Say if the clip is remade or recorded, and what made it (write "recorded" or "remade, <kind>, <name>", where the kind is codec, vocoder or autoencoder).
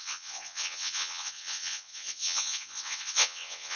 remade, vocoder, WaveNeXt